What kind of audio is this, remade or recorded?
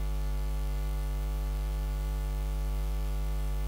remade